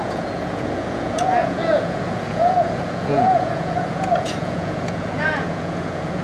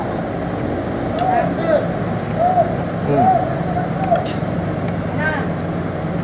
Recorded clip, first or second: second